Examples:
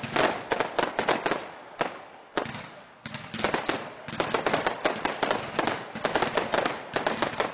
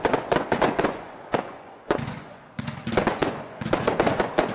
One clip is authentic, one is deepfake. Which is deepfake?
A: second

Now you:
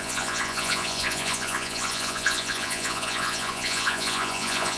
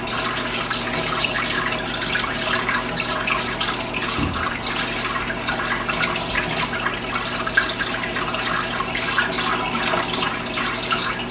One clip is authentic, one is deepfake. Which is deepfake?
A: first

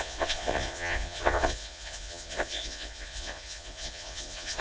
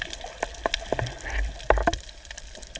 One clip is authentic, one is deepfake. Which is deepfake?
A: first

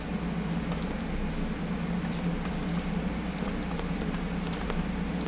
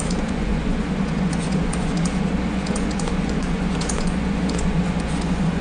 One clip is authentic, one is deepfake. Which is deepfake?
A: second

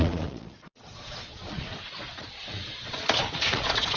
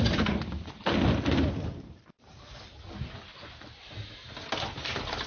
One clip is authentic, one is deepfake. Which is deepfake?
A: first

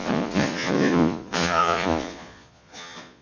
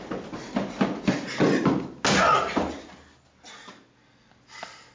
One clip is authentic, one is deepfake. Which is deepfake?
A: first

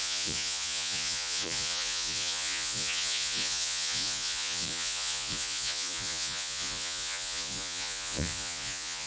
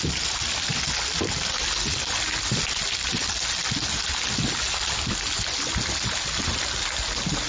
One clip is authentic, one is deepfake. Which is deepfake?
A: first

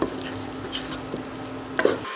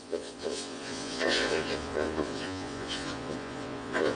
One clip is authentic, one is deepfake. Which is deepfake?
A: second